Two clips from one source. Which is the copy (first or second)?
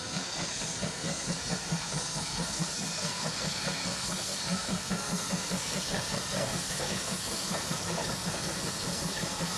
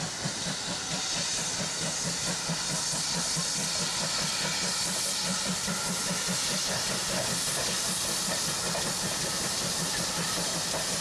first